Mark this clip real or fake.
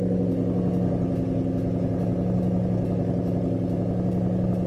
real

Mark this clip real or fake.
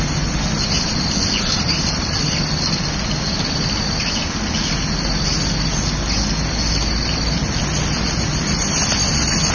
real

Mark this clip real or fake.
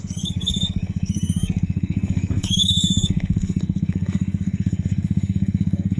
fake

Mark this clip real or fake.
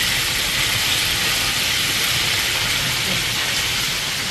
real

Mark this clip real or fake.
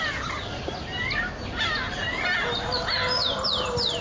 real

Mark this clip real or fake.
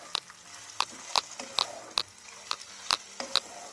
real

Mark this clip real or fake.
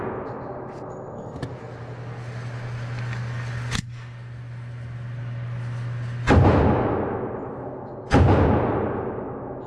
real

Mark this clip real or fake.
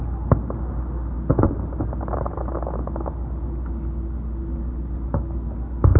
real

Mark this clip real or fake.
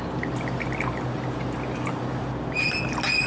real